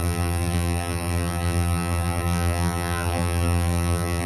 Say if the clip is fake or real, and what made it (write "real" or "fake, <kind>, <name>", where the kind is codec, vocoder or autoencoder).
fake, vocoder, BigVGAN v2